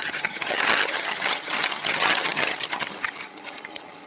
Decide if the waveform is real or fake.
fake